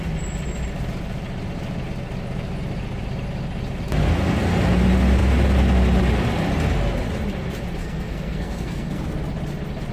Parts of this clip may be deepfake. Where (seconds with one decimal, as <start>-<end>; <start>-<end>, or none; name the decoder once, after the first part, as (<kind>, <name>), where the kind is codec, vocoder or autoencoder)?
7.8-9.0 (codec, SNAC)